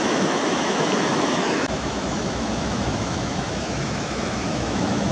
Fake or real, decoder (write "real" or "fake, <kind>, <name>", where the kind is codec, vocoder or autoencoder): fake, autoencoder, DAC-VAE